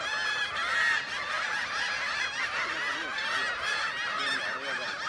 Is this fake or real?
real